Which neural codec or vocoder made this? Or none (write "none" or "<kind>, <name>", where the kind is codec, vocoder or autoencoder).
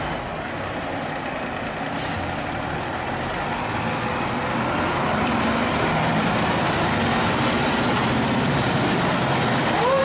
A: none